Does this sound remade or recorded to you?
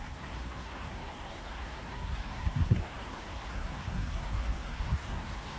remade